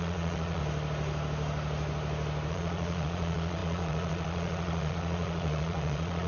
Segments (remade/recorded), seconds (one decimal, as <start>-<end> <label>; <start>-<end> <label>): 0.0-0.6 remade; 0.6-2.5 recorded; 2.5-6.3 remade